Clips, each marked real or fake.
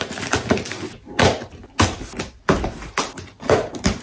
real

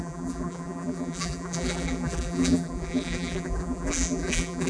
fake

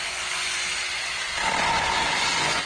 fake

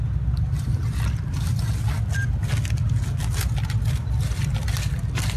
real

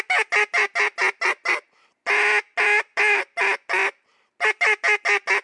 real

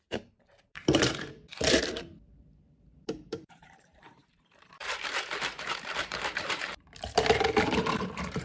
fake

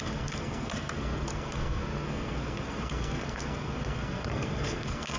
fake